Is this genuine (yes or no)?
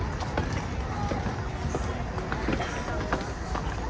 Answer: yes